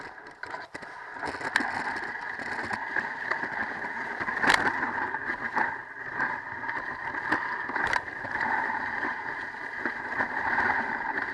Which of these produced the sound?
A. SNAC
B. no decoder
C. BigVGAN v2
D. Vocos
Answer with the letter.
B